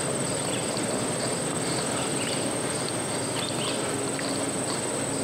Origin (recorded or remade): recorded